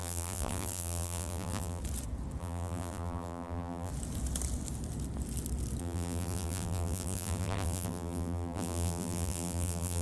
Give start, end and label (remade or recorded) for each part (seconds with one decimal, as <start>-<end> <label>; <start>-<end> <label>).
0.0-1.8 remade; 1.8-2.4 recorded; 2.4-3.9 remade; 3.9-5.8 recorded; 5.8-10.0 remade